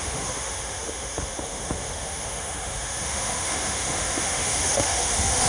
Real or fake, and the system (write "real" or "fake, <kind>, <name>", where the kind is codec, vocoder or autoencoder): fake, autoencoder, DAC-VAE